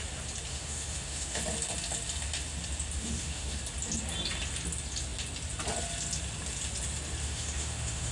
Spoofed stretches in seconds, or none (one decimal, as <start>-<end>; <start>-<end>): 0.5-1.4; 3.0-3.6; 7.2-8.1